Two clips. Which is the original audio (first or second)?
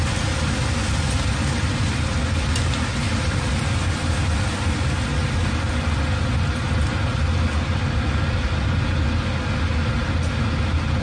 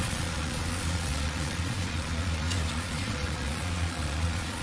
first